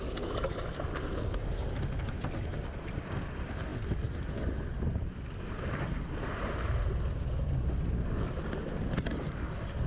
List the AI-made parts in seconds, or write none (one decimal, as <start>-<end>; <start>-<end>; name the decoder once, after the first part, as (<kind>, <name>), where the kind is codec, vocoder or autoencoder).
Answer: none